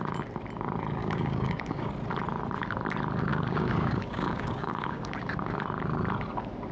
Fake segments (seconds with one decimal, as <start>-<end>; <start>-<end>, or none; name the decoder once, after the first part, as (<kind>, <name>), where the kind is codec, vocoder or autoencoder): 1.0-1.9 (codec, DAC); 3.3-5.0